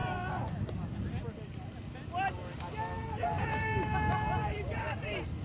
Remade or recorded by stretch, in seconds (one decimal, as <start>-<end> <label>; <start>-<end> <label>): 0.0-5.4 recorded